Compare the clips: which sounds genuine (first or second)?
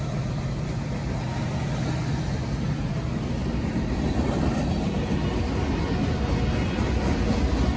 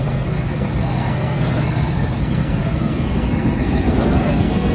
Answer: first